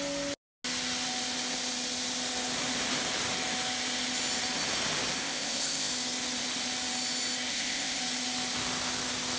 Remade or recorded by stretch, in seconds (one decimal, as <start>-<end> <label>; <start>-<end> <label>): 0.0-5.2 recorded; 5.2-5.9 remade; 5.9-7.5 recorded; 7.5-8.0 remade; 8.0-9.4 recorded